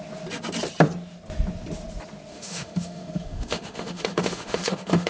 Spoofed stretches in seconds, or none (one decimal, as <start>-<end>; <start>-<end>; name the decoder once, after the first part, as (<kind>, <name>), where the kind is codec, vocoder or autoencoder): 2.3-5.1 (autoencoder, DAC-VAE)